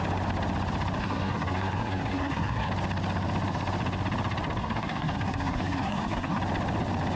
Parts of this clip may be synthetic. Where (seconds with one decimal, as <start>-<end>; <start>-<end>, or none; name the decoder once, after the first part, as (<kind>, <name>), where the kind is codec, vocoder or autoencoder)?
1.0-2.7 (codec, SNAC); 4.6-6.4